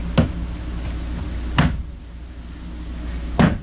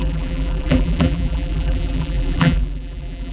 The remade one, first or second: second